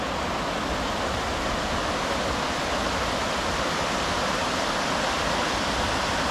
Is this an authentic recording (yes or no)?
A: yes